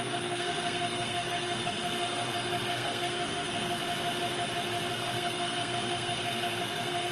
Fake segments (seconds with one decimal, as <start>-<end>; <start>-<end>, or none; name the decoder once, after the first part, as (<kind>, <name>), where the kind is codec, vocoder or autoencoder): 0.0-3.8 (codec, SNAC); 4.9-7.1